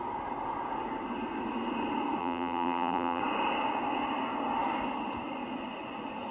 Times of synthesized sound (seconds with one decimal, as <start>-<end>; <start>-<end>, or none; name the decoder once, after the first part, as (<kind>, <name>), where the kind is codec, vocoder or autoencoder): 2.2-3.2 (vocoder, BigVGAN v2)